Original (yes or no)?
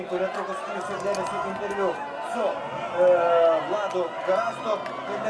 yes